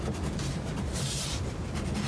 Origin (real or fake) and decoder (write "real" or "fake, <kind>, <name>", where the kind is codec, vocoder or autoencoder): real